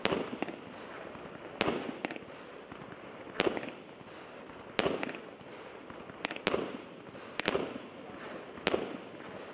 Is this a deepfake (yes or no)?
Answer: no